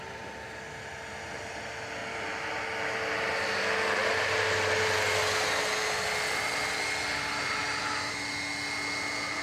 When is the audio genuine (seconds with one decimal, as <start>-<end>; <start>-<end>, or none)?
0.0-9.4